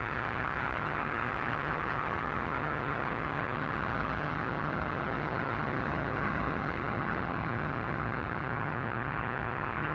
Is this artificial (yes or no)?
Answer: yes